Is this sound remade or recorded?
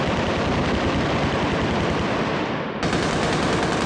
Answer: recorded